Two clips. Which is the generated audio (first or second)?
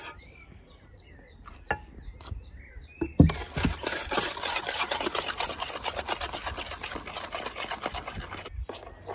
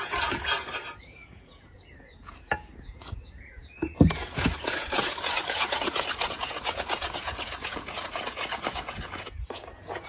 second